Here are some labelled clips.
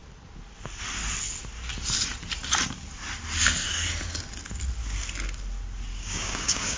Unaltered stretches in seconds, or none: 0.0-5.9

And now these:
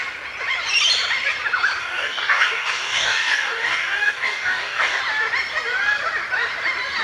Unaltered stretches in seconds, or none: 0.0-1.8; 5.0-7.0

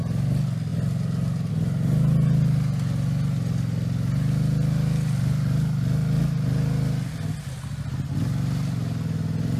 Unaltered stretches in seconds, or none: 0.0-9.6

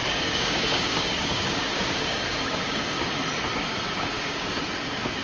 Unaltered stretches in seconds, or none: 3.1-4.1; 4.6-5.2

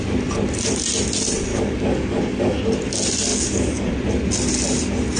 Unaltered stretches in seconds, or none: 0.0-1.5; 2.6-3.3; 3.9-5.2

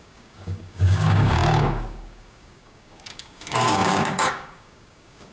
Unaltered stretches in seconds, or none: none

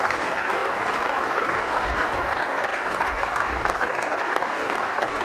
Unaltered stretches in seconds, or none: none